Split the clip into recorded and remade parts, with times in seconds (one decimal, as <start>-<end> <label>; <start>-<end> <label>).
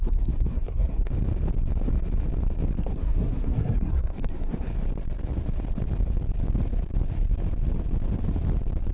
0.0-1.1 remade; 1.1-2.8 recorded; 2.8-4.7 remade; 4.7-8.9 recorded